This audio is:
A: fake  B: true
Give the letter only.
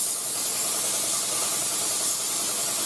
B